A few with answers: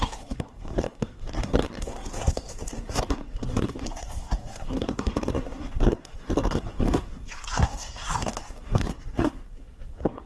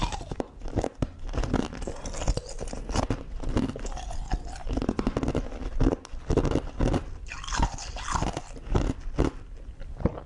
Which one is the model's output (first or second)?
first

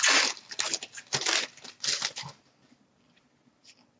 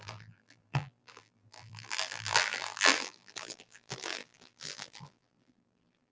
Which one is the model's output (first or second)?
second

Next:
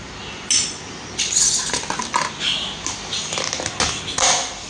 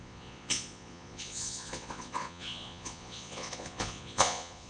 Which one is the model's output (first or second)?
second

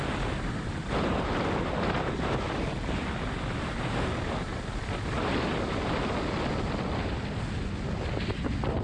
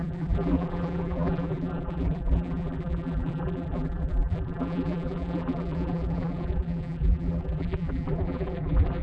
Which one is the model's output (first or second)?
second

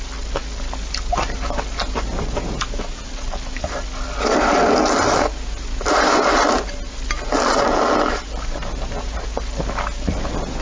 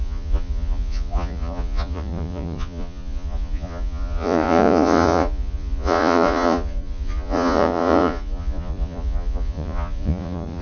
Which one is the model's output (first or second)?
second